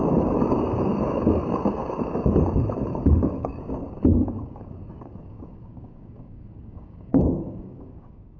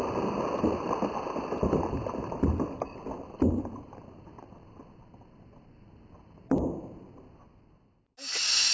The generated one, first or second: first